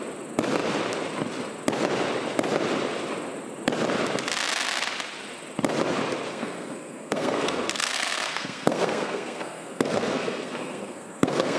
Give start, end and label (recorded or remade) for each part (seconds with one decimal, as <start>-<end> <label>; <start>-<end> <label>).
0.0-6.3 recorded; 6.3-11.6 remade